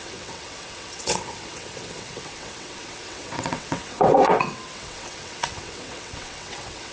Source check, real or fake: fake